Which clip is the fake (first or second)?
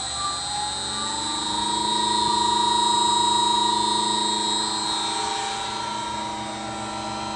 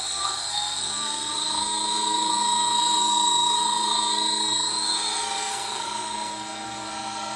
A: second